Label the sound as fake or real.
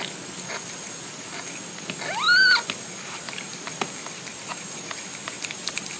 real